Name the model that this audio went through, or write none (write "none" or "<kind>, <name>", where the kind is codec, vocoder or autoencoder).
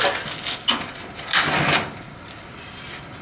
none